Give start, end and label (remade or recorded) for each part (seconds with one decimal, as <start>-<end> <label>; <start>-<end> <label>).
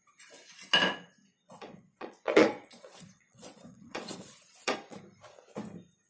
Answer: 0.0-1.3 recorded; 1.3-5.0 remade; 5.0-6.1 recorded